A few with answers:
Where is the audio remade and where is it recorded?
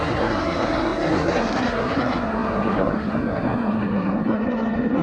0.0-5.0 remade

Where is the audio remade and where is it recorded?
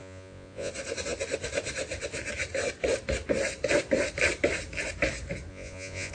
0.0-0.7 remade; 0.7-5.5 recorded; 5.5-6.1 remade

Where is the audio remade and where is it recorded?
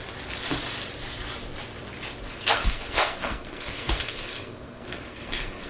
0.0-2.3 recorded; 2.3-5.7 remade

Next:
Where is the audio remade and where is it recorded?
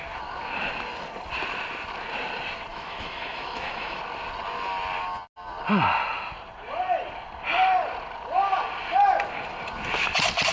0.0-2.7 recorded; 2.7-4.0 remade; 4.0-10.5 recorded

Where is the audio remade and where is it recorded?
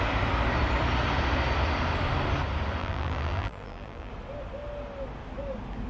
0.0-2.8 recorded; 2.8-4.1 remade; 4.1-5.9 recorded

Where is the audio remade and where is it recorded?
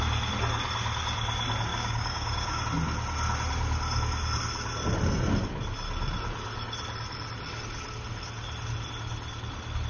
0.0-1.7 recorded; 1.7-2.6 remade; 2.6-9.9 recorded